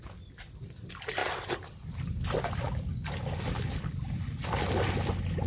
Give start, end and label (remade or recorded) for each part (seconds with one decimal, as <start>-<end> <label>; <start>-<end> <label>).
0.0-5.5 recorded